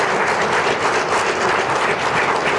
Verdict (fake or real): real